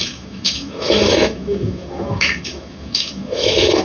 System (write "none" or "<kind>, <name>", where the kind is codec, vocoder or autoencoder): autoencoder, DAC-VAE